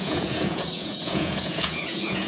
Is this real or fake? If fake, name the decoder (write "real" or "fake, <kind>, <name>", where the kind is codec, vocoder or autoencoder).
fake, vocoder, Vocos